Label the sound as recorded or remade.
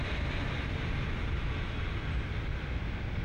recorded